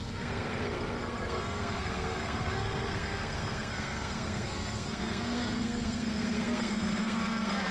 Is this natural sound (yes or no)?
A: no